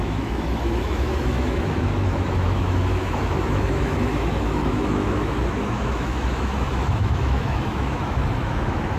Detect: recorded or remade remade